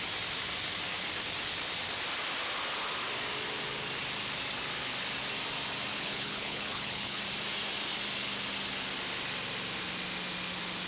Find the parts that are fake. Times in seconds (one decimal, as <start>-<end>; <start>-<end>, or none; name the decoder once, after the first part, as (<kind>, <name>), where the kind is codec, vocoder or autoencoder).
5.9-7.2 (codec, HILCodec)